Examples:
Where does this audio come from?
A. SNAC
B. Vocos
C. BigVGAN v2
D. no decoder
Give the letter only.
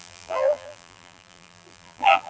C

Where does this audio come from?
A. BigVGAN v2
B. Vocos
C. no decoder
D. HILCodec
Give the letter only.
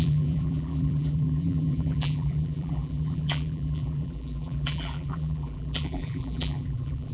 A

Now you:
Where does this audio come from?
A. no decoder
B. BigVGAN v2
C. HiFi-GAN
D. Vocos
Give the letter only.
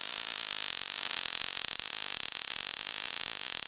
B